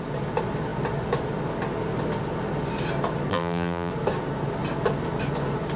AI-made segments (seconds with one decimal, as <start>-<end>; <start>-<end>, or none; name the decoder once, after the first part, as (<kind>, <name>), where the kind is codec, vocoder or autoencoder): 3.3-3.9 (vocoder, BigVGAN v2)